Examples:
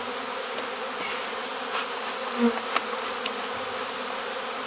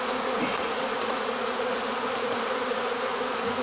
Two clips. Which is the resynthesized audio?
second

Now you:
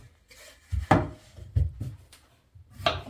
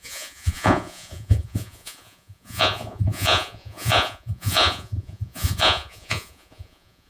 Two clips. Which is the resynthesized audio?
second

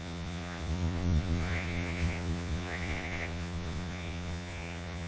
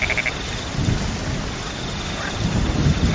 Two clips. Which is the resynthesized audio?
first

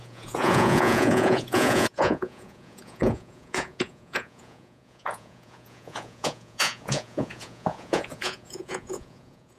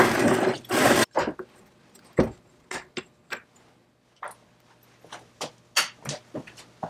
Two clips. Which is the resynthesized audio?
first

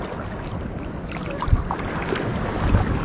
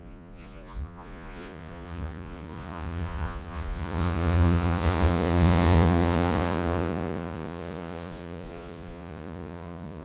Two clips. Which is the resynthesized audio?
second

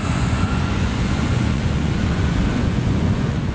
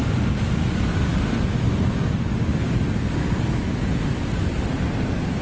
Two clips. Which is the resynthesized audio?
first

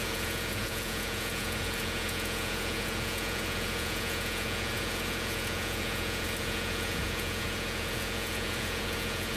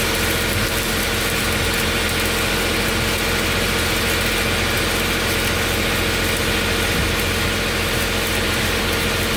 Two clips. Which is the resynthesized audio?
first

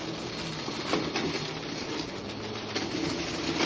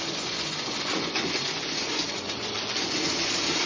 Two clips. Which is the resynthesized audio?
second